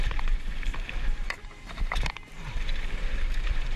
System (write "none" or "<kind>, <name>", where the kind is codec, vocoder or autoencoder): vocoder, BigVGAN v2